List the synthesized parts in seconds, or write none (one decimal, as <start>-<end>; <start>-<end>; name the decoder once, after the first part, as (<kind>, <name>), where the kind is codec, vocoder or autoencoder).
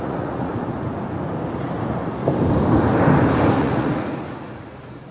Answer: 0.0-0.5 (vocoder, Vocos); 3.6-5.1